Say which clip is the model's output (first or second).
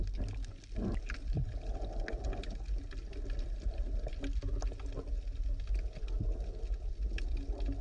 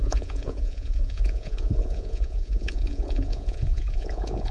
second